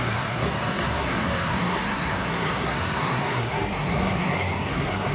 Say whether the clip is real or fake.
fake